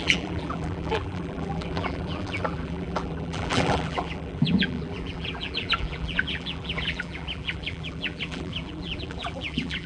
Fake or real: fake